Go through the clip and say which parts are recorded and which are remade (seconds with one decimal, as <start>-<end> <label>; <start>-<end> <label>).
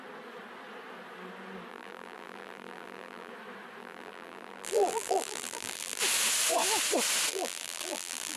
0.0-1.7 recorded; 1.7-3.3 remade; 3.3-3.8 recorded; 3.8-6.0 remade; 6.0-7.3 recorded; 7.3-8.4 remade